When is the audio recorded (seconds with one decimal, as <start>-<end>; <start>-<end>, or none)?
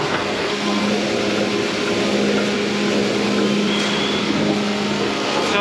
0.8-4.2